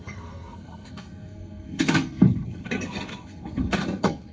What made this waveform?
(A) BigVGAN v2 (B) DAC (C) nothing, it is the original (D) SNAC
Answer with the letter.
D